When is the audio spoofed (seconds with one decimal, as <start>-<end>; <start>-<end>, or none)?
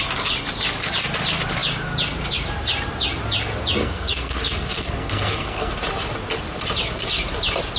3.8-5.7